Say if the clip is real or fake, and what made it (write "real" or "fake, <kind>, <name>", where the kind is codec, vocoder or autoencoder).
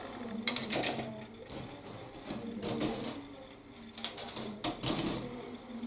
real